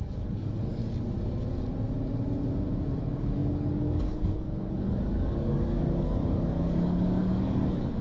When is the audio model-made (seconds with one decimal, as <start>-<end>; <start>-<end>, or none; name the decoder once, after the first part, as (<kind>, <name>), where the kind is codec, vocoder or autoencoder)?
0.0-0.8 (codec, DAC); 3.0-8.0